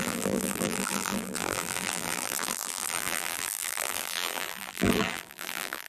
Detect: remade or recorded remade